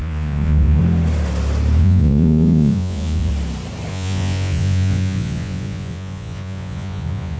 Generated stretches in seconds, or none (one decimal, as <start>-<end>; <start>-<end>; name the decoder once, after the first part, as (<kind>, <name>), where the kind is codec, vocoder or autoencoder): 0.0-0.8 (vocoder, Vocos); 1.8-3.3; 3.9-7.4